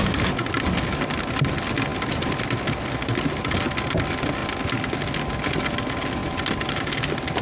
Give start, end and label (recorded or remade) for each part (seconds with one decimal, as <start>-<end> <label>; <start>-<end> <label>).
0.0-1.9 remade; 1.9-3.4 recorded; 3.4-4.4 remade; 4.4-5.5 recorded; 5.5-7.4 remade